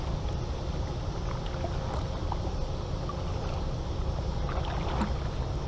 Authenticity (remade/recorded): recorded